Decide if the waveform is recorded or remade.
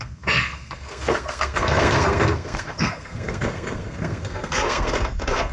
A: remade